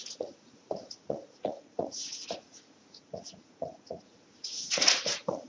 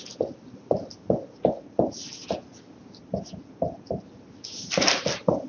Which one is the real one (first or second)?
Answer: second